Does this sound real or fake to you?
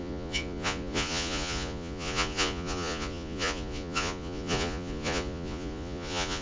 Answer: fake